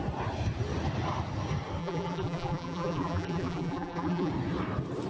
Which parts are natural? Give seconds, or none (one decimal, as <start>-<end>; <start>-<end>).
0.0-1.8; 4.3-5.1